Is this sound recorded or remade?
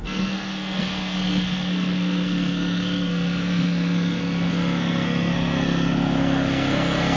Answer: remade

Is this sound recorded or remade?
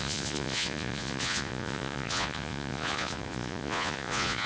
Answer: remade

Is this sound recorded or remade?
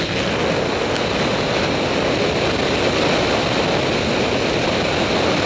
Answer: recorded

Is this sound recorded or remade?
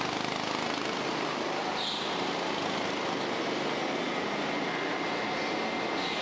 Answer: recorded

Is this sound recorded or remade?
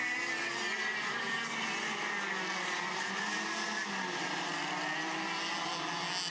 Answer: recorded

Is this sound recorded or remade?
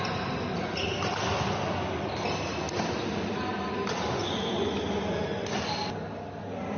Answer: recorded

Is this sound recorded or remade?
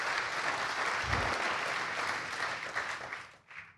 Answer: recorded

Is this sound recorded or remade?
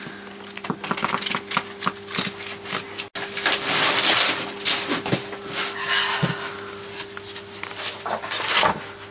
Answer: recorded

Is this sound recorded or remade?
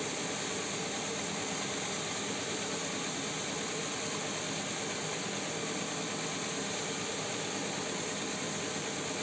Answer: recorded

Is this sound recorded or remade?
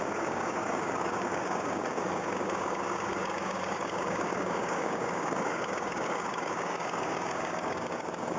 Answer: remade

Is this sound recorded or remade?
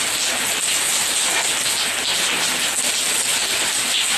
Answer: recorded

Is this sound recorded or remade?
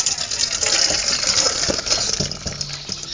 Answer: recorded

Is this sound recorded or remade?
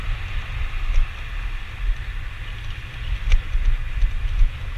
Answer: recorded